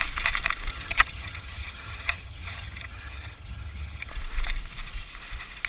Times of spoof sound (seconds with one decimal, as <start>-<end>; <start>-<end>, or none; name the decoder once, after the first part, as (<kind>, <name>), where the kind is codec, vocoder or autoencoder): 0.7-4.1 (vocoder, HiFi-GAN)